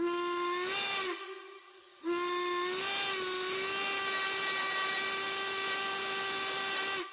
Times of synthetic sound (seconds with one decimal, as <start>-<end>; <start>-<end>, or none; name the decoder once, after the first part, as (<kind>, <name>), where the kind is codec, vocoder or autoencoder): none